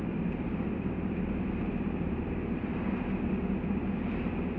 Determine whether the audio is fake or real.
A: fake